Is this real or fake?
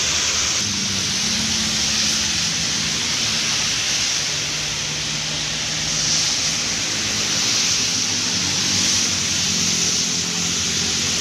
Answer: real